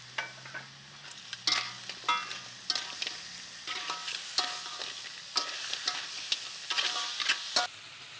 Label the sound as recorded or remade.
recorded